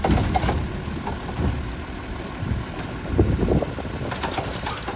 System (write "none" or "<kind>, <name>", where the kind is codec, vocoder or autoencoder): none